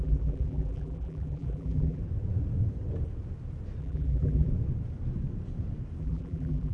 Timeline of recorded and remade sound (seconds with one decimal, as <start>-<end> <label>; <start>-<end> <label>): 0.0-2.0 remade; 2.0-3.8 recorded; 3.8-4.5 remade; 4.5-6.0 recorded; 6.0-6.7 remade